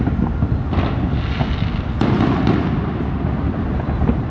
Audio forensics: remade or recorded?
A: recorded